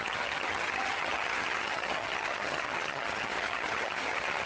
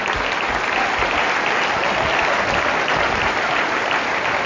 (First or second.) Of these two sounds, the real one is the second